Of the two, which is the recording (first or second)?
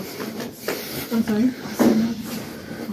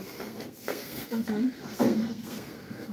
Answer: first